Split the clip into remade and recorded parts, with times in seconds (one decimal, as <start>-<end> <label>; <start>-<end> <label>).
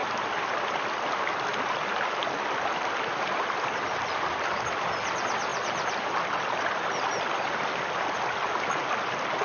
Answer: 0.0-9.4 recorded